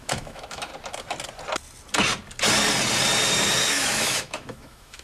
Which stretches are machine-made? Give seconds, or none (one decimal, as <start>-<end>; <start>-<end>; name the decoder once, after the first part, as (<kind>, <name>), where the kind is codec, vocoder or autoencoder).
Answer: 0.0-0.7 (autoencoder, DAC-VAE); 3.7-5.0